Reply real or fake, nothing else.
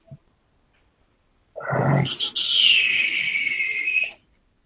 real